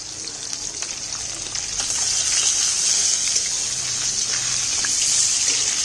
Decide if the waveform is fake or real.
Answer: real